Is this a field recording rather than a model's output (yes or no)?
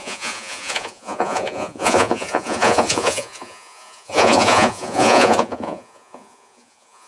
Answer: no